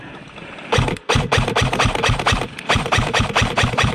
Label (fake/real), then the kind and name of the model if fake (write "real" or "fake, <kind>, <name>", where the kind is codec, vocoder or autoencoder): fake, vocoder, BigVGAN v2